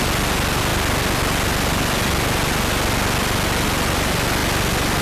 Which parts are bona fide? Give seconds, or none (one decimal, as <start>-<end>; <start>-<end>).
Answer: 0.0-5.0